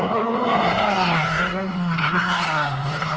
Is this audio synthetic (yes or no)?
yes